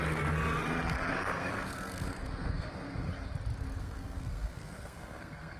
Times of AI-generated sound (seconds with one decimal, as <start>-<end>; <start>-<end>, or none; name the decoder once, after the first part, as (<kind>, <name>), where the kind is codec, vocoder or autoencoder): 1.1-3.1 (codec, SNAC); 3.8-5.6